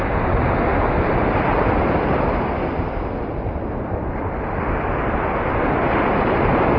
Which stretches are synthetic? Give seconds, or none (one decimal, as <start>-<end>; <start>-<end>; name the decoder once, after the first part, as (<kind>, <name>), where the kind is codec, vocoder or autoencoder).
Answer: none